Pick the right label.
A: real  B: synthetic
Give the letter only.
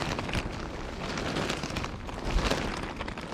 A